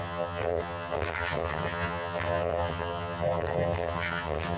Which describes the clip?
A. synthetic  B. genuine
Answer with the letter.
A